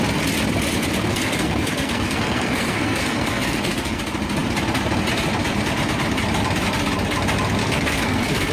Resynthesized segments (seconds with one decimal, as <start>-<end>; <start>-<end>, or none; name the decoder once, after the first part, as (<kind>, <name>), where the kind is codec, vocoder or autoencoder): 1.1-4.0 (codec, SNAC); 7.6-8.5